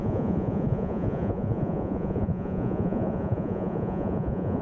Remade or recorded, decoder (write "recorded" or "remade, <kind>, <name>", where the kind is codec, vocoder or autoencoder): remade, vocoder, Vocos